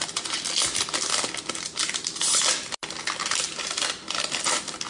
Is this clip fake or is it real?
real